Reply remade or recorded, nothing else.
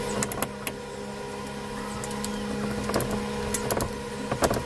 recorded